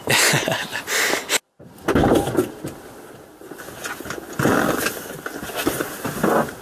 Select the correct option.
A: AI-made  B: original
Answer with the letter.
B